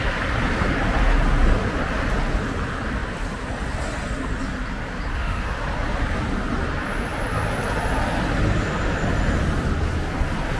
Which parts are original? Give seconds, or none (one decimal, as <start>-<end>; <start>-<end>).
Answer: 0.0-5.1; 5.6-10.6

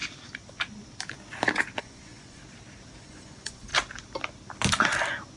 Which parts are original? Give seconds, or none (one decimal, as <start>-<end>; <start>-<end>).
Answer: 0.0-1.8; 2.4-3.0; 3.7-5.4

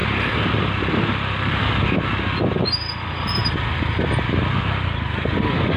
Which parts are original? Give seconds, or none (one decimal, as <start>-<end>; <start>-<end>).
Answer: 2.1-5.8

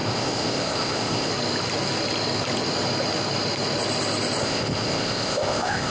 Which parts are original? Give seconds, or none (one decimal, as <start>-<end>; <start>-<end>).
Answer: 1.3-4.4

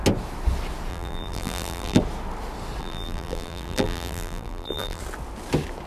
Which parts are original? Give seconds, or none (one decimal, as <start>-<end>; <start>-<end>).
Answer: 0.0-0.9; 2.0-2.8; 5.0-5.9

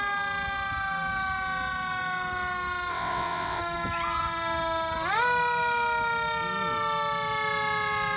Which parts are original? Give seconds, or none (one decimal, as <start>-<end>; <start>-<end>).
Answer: 0.0-2.9; 3.6-8.2